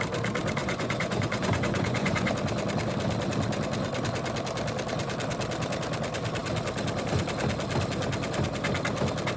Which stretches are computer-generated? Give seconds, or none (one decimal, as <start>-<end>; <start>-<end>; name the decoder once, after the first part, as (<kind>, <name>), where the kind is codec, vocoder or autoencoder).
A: 0.6-2.3 (vocoder, Vocos)